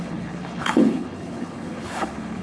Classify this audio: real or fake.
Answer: fake